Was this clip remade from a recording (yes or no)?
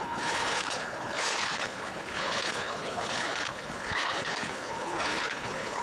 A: yes